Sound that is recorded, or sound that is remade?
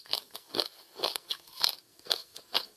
remade